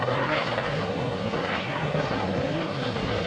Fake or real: fake